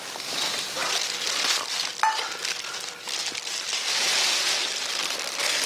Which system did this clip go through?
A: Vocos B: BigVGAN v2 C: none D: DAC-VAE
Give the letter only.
C